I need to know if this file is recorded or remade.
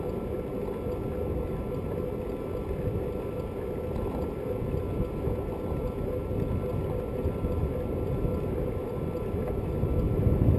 recorded